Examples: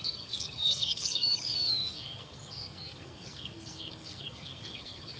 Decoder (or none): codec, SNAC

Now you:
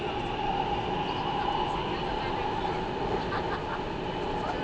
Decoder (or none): none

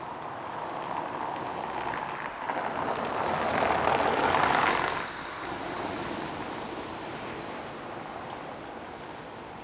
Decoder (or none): none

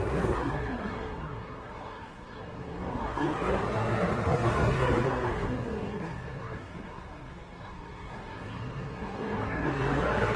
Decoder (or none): codec, SNAC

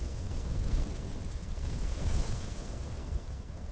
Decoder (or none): codec, SNAC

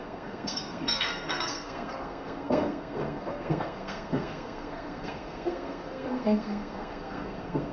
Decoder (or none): codec, SNAC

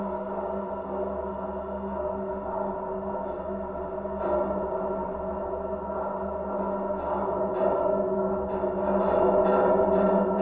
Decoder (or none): none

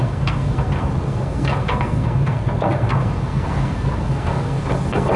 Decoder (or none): codec, SNAC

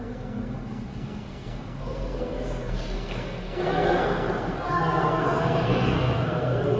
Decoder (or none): codec, SNAC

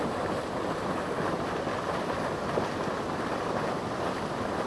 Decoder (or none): none